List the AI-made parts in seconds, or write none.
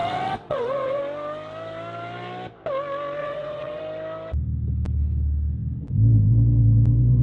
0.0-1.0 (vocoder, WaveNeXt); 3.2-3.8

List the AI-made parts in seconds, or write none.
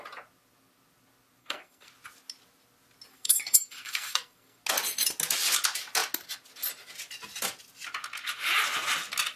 1.4-1.9 (codec, SNAC); 3.1-4.6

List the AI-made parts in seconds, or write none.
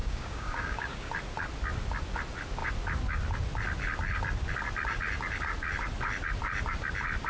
0.0-1.1 (codec, DAC)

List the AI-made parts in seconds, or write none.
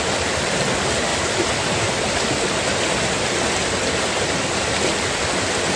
1.1-1.7 (vocoder, BigVGAN v2)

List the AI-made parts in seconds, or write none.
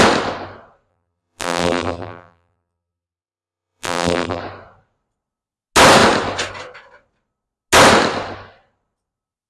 0.9-4.4 (vocoder, BigVGAN v2)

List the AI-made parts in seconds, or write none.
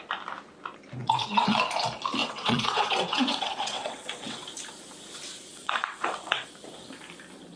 1.0-1.7 (vocoder, WaveNeXt); 2.2-4.4; 5.5-6.5